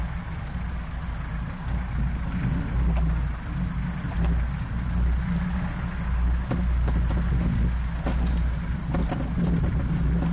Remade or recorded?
recorded